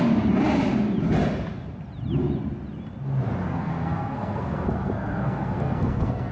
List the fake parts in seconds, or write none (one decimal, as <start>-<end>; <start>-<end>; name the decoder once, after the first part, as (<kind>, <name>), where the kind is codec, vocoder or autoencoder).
3.5-6.3 (codec, SNAC)